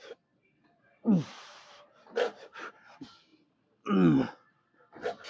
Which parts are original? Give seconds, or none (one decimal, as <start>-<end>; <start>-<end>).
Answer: 3.3-5.3